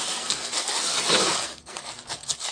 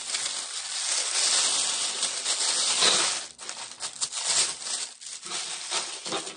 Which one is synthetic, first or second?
first